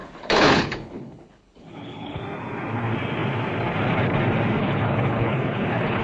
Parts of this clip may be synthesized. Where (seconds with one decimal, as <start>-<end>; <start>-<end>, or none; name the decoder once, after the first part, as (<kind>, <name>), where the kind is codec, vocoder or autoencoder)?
0.0-2.2 (codec, HILCodec); 4.6-6.0